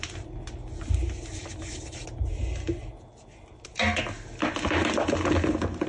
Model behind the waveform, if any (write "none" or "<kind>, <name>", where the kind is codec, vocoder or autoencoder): none